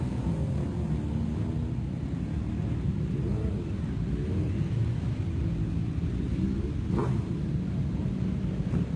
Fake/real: real